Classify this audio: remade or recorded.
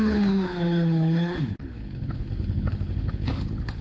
remade